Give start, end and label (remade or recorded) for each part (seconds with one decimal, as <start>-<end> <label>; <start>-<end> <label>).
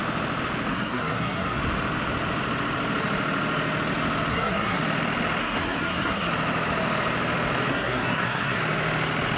0.0-0.7 recorded; 0.7-1.6 remade; 1.6-4.3 recorded; 4.3-4.8 remade; 4.8-5.4 recorded; 5.4-6.3 remade; 6.3-7.7 recorded; 7.7-8.6 remade; 8.6-9.4 recorded